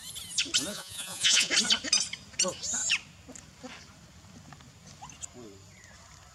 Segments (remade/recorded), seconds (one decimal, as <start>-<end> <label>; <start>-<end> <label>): 0.0-0.7 recorded; 0.7-1.5 remade; 1.5-6.3 recorded